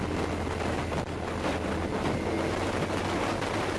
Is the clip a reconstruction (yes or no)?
no